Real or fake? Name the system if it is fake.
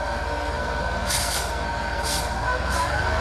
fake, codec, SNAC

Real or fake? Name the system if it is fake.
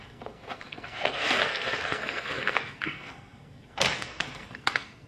fake, codec, SNAC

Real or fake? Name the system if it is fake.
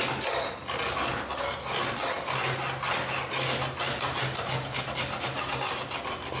real